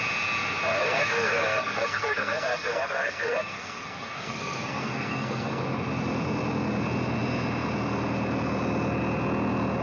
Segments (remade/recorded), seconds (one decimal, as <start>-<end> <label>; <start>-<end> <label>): 0.0-0.8 recorded; 0.8-5.6 remade; 5.6-9.8 recorded